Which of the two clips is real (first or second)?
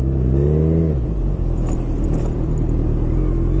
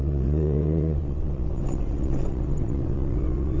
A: first